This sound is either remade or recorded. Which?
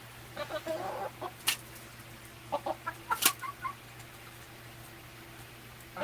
recorded